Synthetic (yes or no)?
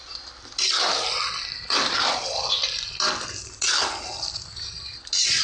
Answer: no